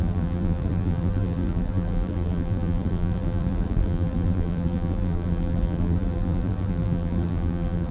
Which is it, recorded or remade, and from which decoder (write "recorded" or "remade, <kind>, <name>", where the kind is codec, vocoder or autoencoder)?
remade, vocoder, BigVGAN v2